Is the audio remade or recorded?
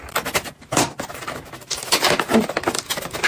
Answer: recorded